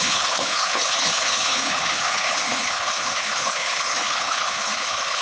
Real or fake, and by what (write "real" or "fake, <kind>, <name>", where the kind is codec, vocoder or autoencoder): fake, codec, HILCodec